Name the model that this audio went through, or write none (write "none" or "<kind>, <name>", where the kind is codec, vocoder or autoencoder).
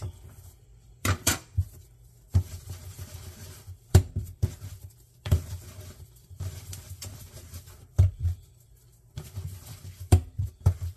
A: vocoder, BigVGAN v2